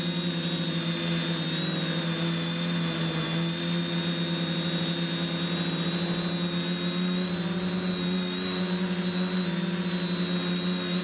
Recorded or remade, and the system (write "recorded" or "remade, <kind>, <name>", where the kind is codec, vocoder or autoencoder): recorded